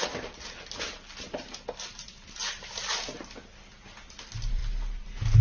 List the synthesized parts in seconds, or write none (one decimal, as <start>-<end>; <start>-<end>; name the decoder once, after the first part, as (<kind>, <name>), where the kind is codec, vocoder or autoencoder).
0.0-4.6 (vocoder, BigVGAN v2)